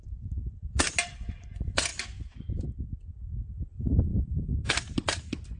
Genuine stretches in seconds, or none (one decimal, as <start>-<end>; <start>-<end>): 0.0-5.6